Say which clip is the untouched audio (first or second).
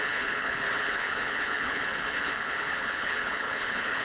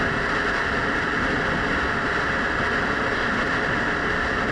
second